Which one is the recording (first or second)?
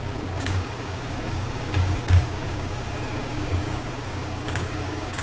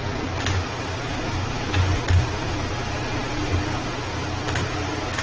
second